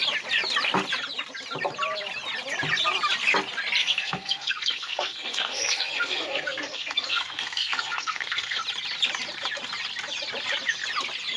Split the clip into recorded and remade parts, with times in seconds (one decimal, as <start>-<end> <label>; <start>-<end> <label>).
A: 0.0-3.8 recorded; 3.8-8.6 remade; 8.6-11.4 recorded